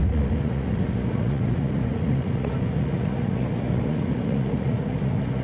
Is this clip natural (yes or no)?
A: no